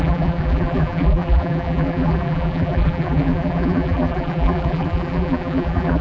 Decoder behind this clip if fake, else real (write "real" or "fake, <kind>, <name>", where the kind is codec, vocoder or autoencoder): fake, vocoder, BigVGAN v2